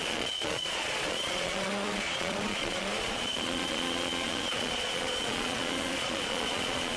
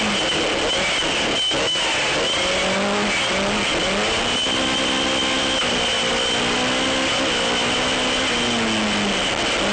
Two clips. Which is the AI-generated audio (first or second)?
first